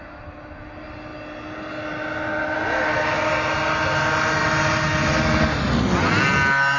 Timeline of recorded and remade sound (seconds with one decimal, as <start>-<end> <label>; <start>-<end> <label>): 0.0-6.8 recorded